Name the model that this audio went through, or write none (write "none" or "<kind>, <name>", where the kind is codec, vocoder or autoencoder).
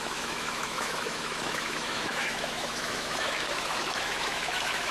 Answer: autoencoder, DAC-VAE